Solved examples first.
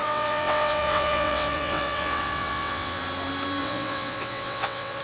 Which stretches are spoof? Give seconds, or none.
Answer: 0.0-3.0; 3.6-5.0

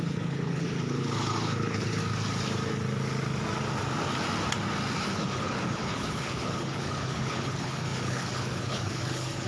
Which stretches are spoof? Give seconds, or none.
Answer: 0.0-2.0; 5.0-9.5